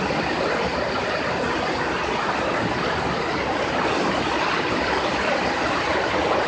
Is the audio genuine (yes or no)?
yes